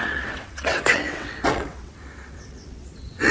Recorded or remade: remade